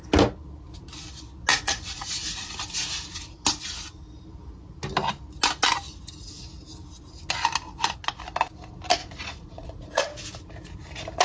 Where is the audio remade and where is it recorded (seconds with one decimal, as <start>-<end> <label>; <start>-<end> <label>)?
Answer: 0.0-1.5 recorded; 1.5-2.5 remade; 2.5-9.0 recorded; 9.0-10.0 remade; 10.0-11.2 recorded